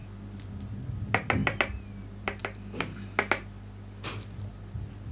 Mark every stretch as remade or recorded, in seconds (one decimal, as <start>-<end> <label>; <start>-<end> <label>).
0.0-5.1 recorded